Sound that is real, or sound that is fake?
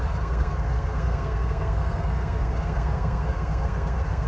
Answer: fake